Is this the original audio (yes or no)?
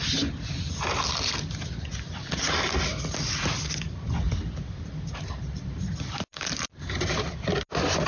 yes